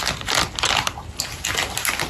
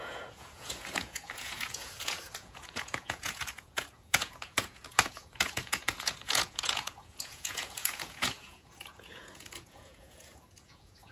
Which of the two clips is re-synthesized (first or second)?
second